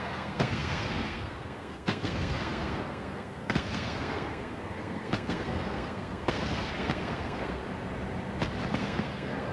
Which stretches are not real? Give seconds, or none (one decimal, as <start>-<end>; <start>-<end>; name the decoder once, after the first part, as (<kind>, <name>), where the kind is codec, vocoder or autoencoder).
0.0-7.6 (codec, SNAC); 8.7-9.5